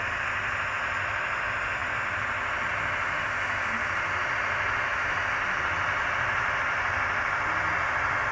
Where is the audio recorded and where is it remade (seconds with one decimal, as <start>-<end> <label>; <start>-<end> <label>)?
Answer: 0.0-8.3 recorded